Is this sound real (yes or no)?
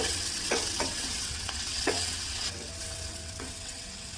no